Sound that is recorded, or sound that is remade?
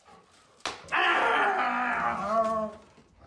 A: recorded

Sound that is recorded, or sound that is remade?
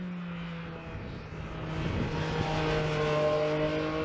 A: recorded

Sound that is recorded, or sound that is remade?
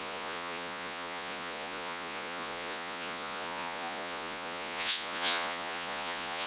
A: remade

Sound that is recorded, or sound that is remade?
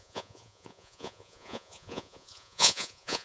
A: remade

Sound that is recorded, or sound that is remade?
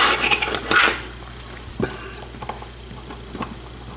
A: recorded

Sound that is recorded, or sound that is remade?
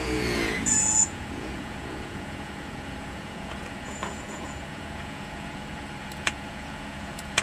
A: remade